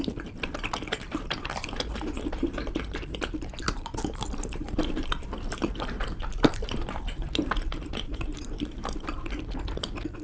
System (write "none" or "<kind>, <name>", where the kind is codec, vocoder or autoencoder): vocoder, BigVGAN v2